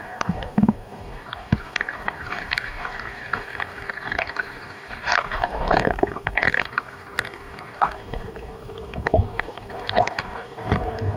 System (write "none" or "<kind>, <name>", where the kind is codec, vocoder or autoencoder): codec, DAC